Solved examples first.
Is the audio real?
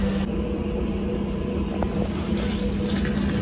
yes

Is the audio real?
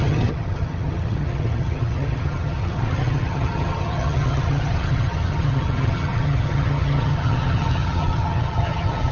no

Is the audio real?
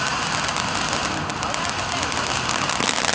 yes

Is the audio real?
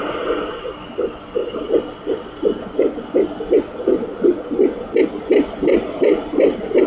yes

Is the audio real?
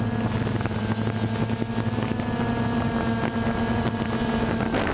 yes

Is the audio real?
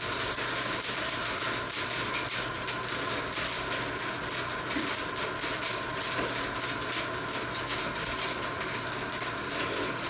yes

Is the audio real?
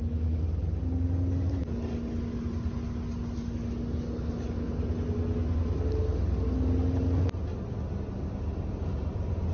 yes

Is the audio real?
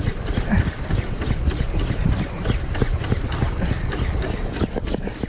yes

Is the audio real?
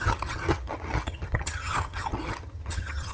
no